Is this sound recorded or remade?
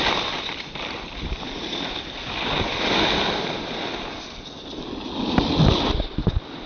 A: recorded